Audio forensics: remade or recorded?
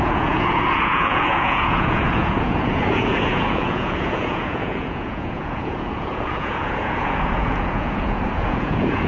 remade